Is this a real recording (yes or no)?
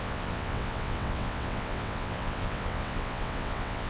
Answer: no